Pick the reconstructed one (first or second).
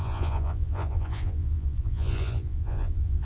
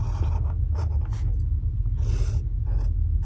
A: first